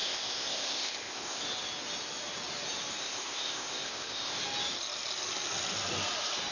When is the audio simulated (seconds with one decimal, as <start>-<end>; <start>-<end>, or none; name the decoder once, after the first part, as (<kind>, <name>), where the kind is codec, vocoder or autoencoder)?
0.0-1.4 (codec, ZipCodec); 3.0-4.4